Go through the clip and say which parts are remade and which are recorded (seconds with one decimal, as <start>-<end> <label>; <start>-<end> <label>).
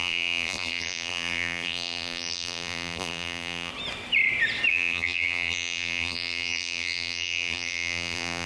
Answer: 0.0-3.7 remade; 3.7-4.7 recorded; 4.7-8.5 remade